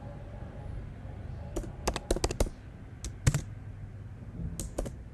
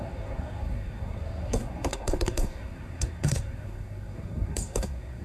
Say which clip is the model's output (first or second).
second